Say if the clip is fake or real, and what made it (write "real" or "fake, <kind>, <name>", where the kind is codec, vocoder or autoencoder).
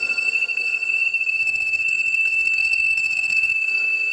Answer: fake, codec, SNAC